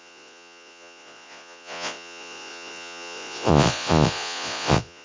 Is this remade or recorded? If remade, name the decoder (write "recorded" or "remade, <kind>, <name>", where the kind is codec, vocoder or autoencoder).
remade, vocoder, Vocos